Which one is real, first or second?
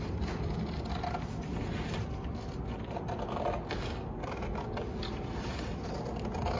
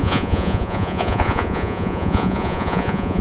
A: first